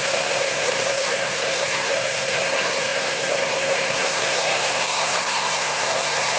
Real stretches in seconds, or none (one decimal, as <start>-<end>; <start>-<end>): none